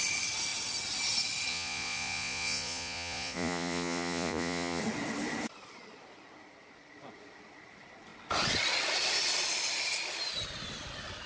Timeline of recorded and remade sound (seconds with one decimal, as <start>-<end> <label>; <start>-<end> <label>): 0.0-1.5 recorded; 1.5-4.8 remade; 4.8-11.3 recorded